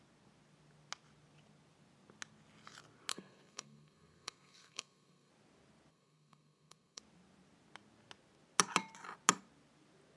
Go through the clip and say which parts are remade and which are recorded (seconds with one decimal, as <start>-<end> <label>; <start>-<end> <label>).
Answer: 0.0-3.1 recorded; 3.1-5.3 remade; 5.3-5.9 recorded; 5.9-7.0 remade; 7.0-10.2 recorded